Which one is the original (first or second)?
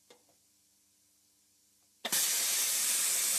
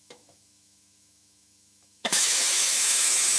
first